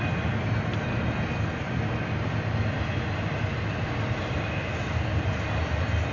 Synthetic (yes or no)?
no